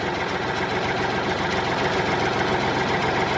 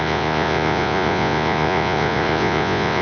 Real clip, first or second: first